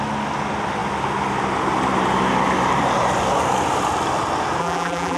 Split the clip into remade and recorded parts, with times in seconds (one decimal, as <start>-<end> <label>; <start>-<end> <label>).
0.0-4.6 recorded; 4.6-5.2 remade